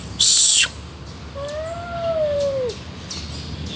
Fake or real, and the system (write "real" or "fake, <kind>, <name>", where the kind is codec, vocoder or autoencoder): real